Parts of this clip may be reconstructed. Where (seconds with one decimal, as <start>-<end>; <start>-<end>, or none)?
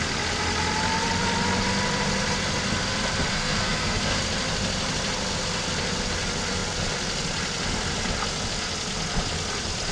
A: 3.3-4.2